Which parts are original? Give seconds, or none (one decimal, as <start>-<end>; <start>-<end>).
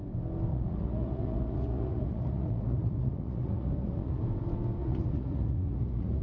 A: 0.0-0.5; 4.2-4.8